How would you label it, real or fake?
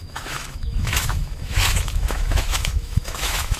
fake